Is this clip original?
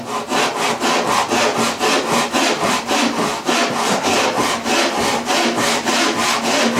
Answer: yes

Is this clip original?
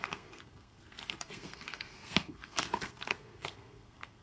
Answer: no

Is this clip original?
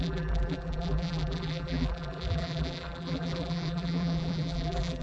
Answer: no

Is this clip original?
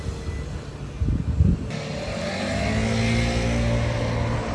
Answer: yes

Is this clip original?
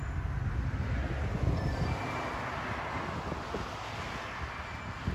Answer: yes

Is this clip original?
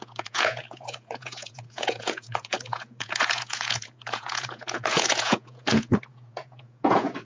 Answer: no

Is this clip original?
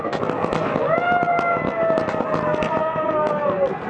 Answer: yes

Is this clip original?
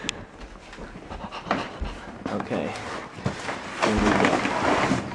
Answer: yes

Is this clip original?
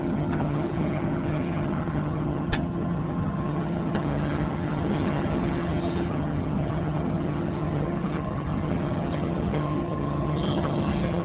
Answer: no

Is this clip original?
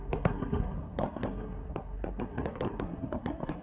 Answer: no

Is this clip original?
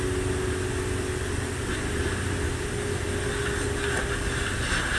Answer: yes